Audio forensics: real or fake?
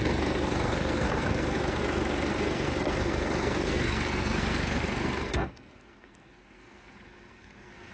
fake